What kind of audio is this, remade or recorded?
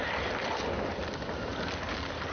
recorded